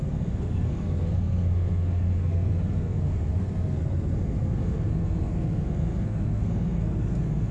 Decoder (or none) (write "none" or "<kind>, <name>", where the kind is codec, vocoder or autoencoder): codec, SNAC